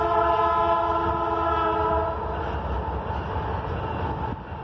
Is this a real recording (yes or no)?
yes